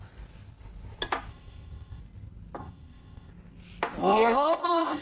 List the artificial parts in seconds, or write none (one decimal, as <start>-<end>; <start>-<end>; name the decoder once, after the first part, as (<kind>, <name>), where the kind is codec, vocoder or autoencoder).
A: 1.3-2.0 (codec, ZipCodec); 2.6-3.3; 4.0-5.0